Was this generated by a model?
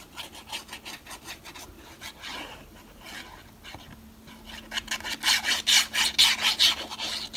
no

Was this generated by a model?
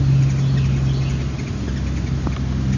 no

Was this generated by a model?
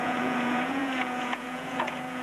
yes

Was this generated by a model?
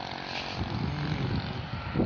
no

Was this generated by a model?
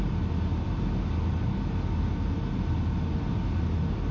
no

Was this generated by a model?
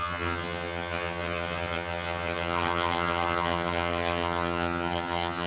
yes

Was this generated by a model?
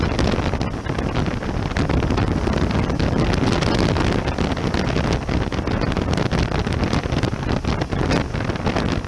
no